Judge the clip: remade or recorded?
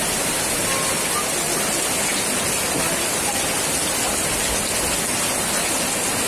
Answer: recorded